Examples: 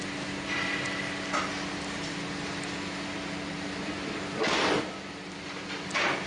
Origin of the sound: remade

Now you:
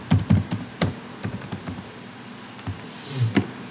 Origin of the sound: recorded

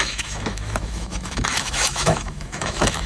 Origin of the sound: remade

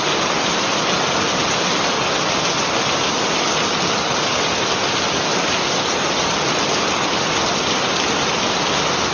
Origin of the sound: recorded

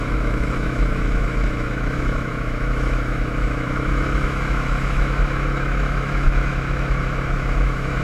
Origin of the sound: remade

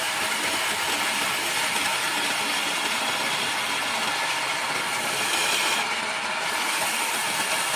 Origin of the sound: remade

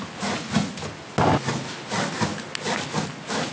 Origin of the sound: recorded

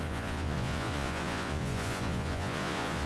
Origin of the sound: remade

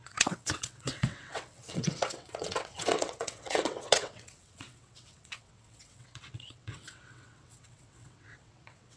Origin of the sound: remade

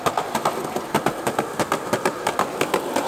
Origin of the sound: recorded